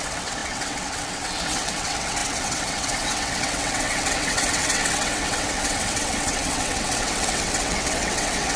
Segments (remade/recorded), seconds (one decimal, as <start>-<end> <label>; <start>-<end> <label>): 0.0-8.6 remade